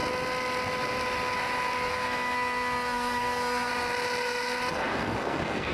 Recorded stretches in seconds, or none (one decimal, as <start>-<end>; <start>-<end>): 0.0-1.9; 3.7-4.7